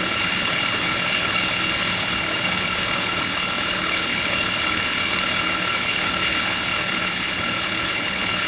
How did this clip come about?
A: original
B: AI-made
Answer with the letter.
B